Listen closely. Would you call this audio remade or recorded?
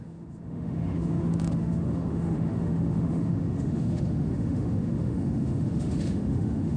remade